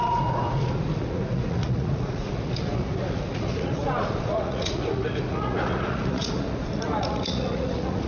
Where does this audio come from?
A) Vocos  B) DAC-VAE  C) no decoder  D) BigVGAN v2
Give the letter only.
A